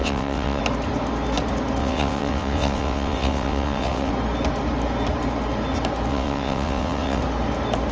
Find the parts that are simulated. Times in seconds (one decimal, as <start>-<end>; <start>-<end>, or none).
0.0-0.6; 1.8-4.1; 6.1-7.2